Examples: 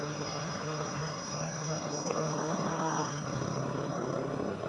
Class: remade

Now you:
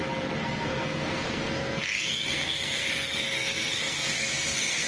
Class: remade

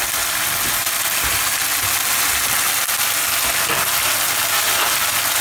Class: recorded